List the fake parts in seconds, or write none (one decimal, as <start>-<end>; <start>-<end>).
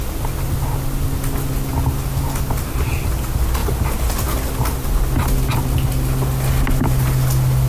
none